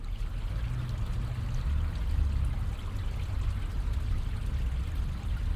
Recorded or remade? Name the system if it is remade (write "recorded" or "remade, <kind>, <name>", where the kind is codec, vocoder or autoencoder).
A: recorded